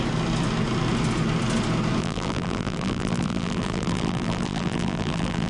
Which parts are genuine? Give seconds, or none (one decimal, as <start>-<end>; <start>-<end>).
0.0-2.0